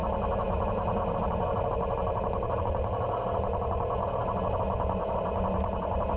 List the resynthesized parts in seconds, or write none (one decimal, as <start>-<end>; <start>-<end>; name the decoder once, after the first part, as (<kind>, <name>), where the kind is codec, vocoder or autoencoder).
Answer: none